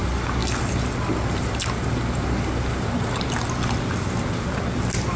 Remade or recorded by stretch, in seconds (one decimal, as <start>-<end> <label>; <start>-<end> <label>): 0.0-5.2 recorded